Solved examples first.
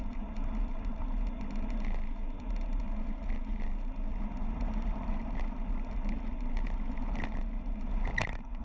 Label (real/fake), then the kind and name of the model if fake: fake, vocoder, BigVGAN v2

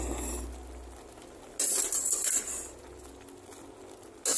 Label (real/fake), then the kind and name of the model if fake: real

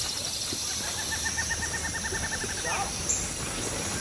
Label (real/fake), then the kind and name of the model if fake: real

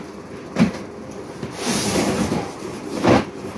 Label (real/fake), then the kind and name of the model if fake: real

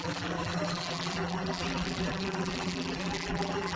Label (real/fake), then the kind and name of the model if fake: fake, vocoder, BigVGAN v2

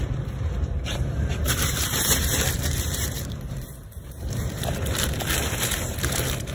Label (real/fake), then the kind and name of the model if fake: fake, vocoder, BigVGAN v2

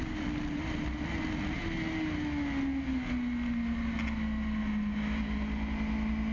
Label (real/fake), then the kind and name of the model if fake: real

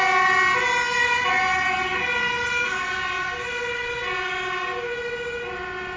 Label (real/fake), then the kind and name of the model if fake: real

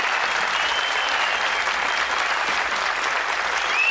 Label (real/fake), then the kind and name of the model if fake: real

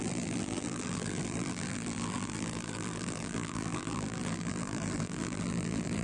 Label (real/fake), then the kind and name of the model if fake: fake, vocoder, BigVGAN v2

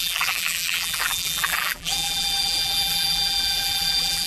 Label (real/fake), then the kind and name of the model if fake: fake, vocoder, BigVGAN v2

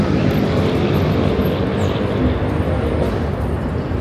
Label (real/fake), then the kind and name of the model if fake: real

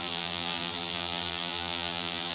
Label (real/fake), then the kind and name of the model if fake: fake, vocoder, BigVGAN v2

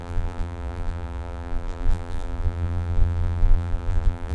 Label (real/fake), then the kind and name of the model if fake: fake, vocoder, BigVGAN v2